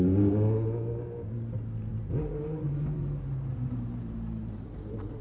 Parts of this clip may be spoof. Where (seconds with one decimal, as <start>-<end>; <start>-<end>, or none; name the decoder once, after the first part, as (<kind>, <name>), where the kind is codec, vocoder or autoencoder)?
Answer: 1.9-5.2 (vocoder, BigVGAN v2)